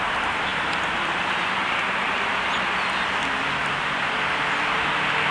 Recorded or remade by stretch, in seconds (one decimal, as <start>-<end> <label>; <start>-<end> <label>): 0.0-5.3 recorded